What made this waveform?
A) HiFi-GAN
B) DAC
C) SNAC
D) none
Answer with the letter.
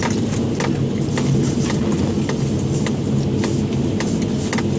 D